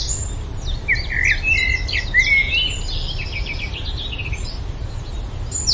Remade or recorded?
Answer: recorded